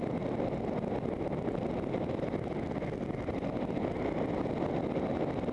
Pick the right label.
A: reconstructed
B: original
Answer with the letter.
B